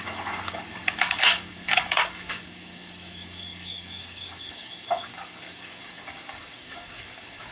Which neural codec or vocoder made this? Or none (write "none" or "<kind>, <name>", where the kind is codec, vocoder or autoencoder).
codec, DAC